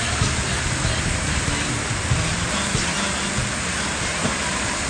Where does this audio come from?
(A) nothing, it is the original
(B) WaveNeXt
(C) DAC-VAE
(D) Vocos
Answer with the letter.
A